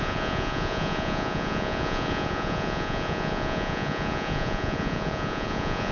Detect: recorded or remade remade